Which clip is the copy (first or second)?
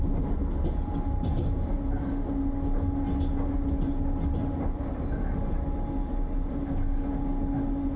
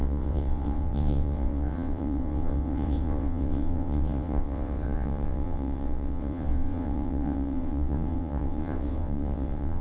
second